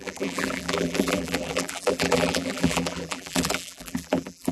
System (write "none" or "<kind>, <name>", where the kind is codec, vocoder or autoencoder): vocoder, BigVGAN v2